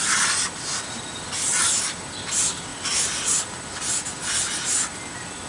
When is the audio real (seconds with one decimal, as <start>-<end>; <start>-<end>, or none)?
0.0-5.5